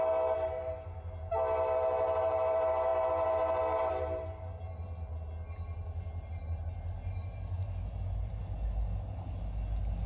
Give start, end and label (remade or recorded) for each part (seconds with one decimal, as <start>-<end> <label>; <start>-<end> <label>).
0.0-10.1 recorded